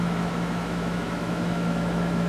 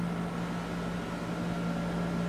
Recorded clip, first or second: second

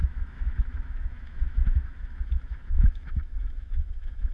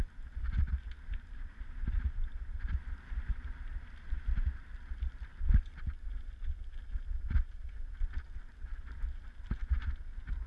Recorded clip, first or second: second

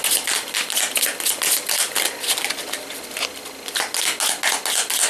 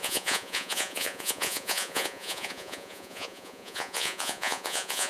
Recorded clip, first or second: first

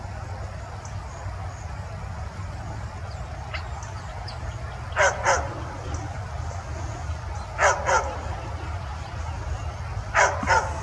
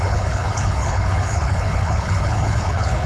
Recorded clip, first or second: first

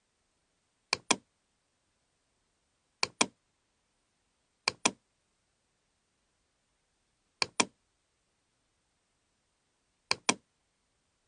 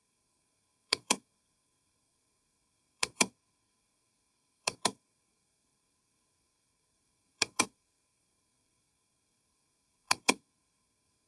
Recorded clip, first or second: first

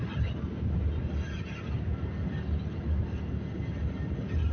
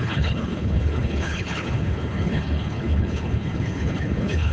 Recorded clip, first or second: first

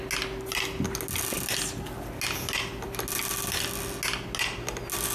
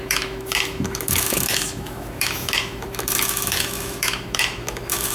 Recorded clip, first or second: first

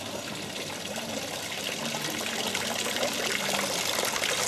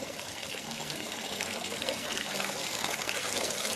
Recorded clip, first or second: first